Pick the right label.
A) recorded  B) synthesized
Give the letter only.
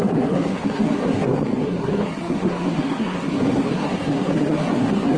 B